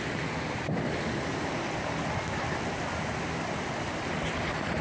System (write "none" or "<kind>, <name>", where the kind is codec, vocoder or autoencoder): none